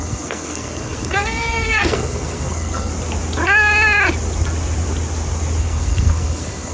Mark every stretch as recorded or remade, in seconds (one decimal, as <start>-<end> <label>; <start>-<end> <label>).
0.0-2.9 remade; 2.9-5.6 recorded; 5.6-6.7 remade